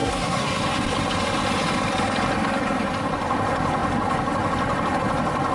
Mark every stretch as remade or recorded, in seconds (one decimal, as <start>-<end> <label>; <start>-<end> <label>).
0.0-0.6 remade; 0.6-5.5 recorded